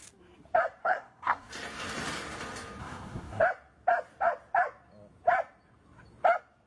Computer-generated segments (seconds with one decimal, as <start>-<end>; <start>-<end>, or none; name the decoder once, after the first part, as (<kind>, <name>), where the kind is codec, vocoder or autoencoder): 0.8-1.5 (codec, SNAC); 2.8-3.4